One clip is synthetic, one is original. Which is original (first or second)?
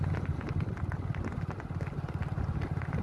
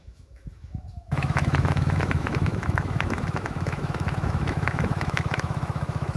first